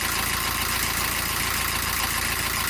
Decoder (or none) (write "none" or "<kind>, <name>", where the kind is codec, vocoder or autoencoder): none